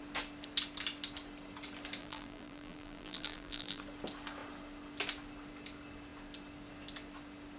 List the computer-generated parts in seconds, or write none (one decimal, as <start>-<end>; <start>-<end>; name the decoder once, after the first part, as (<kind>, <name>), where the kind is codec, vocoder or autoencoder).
2.0-3.8 (vocoder, BigVGAN v2)